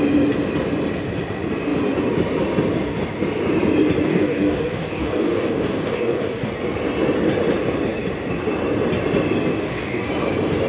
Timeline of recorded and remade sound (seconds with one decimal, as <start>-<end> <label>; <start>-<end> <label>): 0.0-4.1 recorded; 4.1-6.5 remade; 6.5-9.5 recorded; 9.5-10.1 remade; 10.1-10.7 recorded